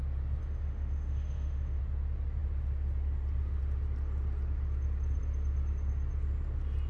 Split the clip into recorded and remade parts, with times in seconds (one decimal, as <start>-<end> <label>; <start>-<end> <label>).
0.0-0.4 recorded; 0.4-1.8 remade; 1.8-6.9 recorded